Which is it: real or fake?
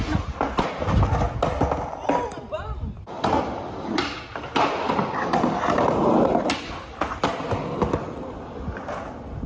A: real